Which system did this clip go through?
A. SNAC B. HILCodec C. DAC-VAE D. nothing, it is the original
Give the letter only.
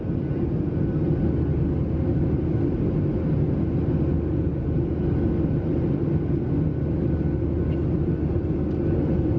D